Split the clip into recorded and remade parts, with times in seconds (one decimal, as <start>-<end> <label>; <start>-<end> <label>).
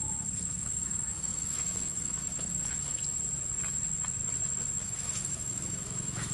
0.0-3.0 remade; 3.0-4.8 recorded; 4.8-6.3 remade